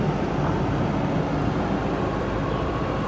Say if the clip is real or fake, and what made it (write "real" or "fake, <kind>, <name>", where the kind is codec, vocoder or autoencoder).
real